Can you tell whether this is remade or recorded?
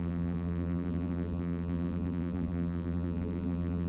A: remade